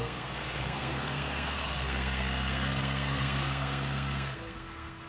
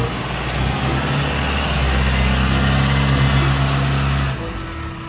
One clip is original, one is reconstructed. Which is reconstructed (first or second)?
first